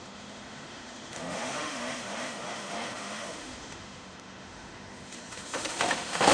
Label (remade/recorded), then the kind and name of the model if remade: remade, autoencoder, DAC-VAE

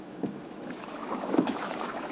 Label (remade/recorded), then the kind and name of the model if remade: remade, autoencoder, DAC-VAE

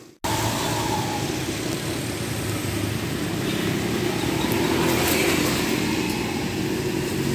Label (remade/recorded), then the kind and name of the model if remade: recorded